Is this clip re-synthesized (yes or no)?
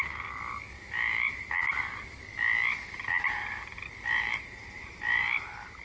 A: no